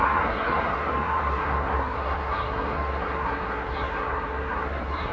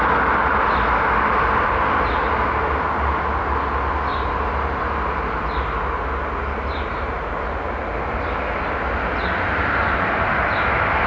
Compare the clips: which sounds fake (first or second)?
first